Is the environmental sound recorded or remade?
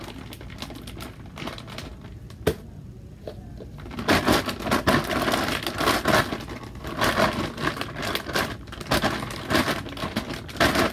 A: recorded